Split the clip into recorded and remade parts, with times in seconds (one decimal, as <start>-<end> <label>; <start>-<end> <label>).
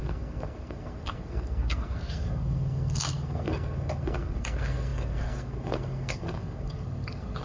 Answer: 0.0-7.4 remade